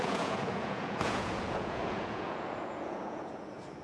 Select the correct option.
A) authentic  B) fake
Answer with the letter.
B